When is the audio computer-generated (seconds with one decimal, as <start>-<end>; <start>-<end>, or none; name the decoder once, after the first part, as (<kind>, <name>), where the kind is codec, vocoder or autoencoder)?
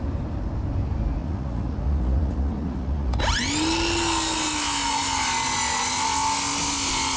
1.2-3.2 (vocoder, Vocos)